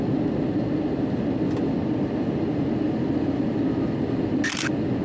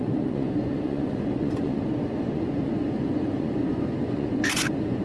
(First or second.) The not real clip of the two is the second